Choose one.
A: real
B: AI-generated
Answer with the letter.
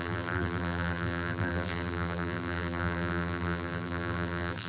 B